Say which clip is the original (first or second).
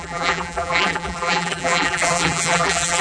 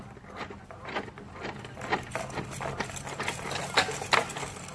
second